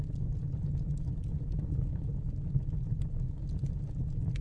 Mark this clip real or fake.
real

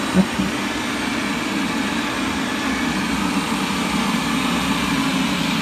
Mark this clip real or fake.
real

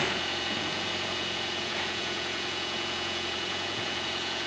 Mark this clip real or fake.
fake